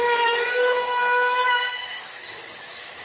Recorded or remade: remade